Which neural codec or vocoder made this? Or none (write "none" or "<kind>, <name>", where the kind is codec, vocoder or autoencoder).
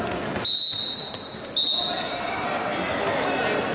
none